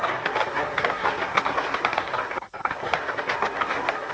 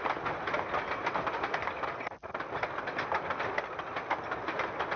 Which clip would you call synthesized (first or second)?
first